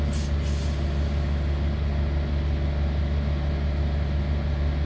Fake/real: real